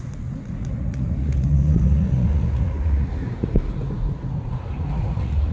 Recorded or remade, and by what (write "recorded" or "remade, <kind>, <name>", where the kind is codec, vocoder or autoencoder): remade, vocoder, Vocos